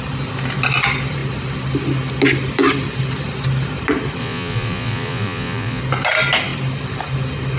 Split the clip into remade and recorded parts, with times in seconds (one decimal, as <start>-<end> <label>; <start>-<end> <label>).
0.0-4.2 recorded; 4.2-5.8 remade; 5.8-7.6 recorded